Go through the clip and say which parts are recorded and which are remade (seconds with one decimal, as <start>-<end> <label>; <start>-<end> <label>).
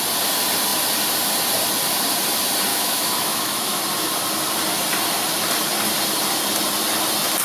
0.0-2.7 recorded; 2.7-3.8 remade; 3.8-7.4 recorded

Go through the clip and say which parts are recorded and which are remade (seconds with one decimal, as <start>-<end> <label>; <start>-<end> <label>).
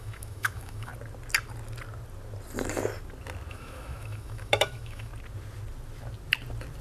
0.0-0.9 remade; 0.9-3.5 recorded; 3.5-5.1 remade; 5.1-6.8 recorded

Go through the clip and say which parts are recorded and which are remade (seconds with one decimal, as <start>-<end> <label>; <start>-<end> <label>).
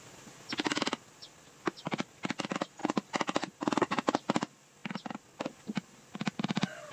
0.0-6.9 recorded